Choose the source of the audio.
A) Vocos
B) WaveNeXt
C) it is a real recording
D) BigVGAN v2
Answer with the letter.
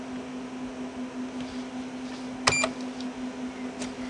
C